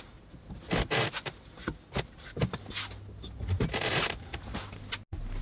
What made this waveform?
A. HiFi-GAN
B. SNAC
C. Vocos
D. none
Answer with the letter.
D